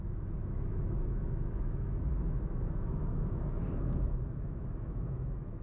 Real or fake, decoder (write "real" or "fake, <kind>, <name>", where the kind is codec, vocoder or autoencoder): fake, autoencoder, DAC-VAE